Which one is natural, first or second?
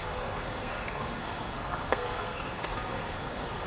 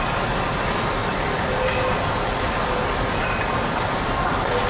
second